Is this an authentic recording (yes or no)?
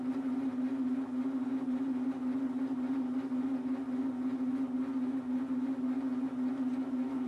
yes